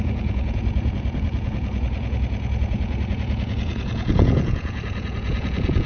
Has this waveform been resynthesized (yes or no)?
yes